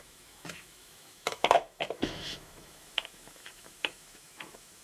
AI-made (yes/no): yes